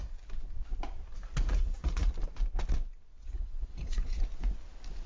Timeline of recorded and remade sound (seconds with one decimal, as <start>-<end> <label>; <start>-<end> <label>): 0.0-1.5 recorded; 1.5-2.1 remade; 2.1-3.2 recorded; 3.2-4.2 remade; 4.2-5.1 recorded